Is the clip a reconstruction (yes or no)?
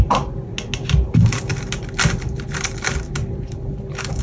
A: no